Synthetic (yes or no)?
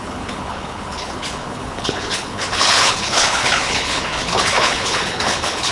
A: yes